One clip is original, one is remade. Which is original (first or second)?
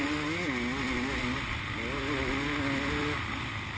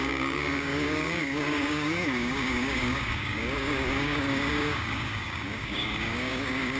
first